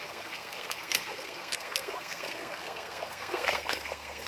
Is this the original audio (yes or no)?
no